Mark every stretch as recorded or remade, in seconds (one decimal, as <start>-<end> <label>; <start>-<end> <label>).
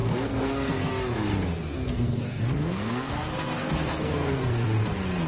0.0-0.9 remade; 0.9-1.3 recorded; 1.3-4.5 remade; 4.5-5.3 recorded